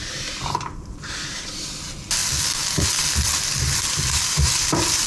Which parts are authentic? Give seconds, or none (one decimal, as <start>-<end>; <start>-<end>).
0.0-5.1